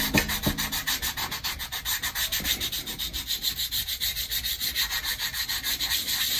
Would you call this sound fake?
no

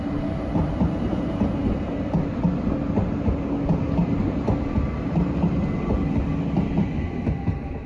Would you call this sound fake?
no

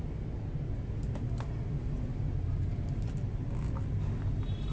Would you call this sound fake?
no